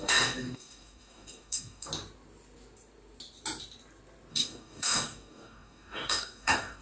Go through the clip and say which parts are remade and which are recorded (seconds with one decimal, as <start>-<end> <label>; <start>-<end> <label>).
0.0-1.9 remade; 1.9-4.3 recorded; 4.3-6.8 remade